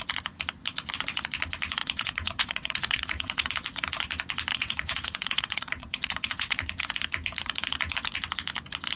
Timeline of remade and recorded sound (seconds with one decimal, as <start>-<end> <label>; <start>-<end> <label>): 0.0-1.8 recorded; 1.8-3.5 remade; 3.5-4.5 recorded; 4.5-6.8 remade; 6.8-9.0 recorded